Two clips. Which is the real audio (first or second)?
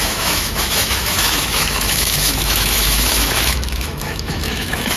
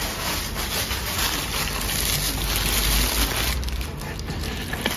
second